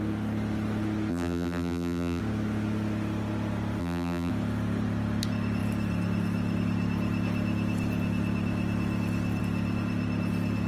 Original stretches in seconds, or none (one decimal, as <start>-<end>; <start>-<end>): 0.0-1.1; 2.2-3.8; 4.3-10.7